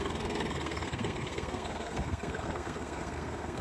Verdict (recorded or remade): remade